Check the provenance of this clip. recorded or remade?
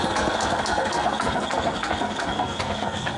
remade